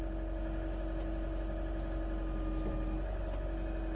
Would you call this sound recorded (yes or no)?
yes